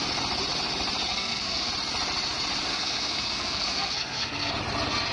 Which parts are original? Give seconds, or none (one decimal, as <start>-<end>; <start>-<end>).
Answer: 0.0-1.1; 1.7-2.7; 4.5-5.1